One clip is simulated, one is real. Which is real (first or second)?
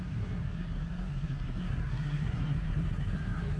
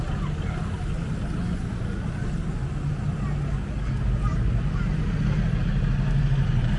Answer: second